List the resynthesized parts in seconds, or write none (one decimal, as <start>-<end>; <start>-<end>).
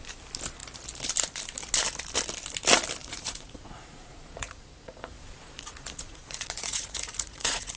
3.0-7.8